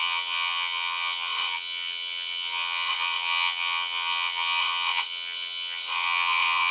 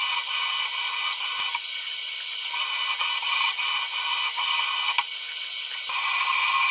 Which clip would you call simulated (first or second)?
first